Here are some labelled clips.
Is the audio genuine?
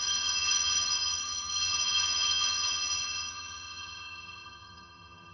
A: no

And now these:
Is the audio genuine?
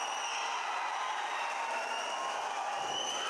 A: yes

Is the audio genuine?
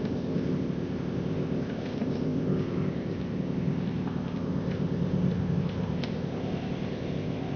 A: no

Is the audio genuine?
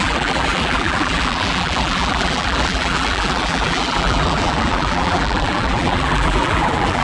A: no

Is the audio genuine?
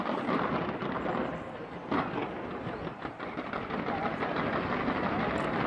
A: yes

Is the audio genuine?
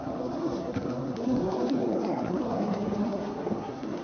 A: no